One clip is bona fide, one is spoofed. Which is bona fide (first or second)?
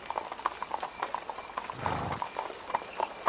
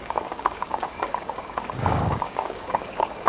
first